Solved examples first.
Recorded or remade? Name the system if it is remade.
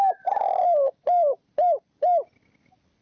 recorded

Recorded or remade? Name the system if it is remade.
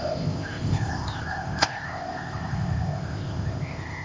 remade, codec, ZipCodec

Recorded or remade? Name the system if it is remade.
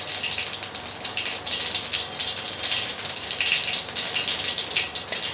recorded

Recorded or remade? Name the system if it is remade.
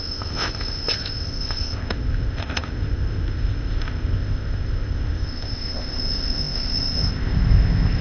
remade, codec, ZipCodec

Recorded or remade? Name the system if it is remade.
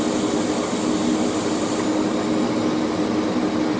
recorded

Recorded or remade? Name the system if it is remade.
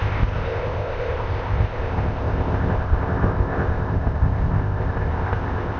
remade, codec, ZipCodec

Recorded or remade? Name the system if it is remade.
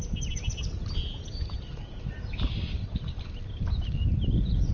recorded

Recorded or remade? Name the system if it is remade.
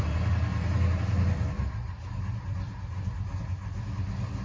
recorded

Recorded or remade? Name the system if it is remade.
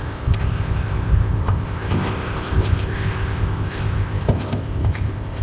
remade, codec, ZipCodec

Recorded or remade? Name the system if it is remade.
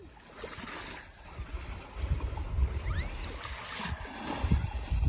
recorded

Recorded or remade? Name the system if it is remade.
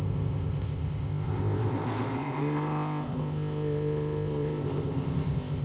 remade, codec, ZipCodec